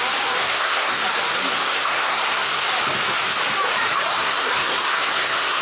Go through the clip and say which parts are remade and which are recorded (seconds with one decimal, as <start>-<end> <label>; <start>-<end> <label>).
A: 0.0-0.4 recorded; 0.4-1.0 remade; 1.0-1.5 recorded; 1.5-2.7 remade; 2.7-4.2 recorded; 4.2-5.6 remade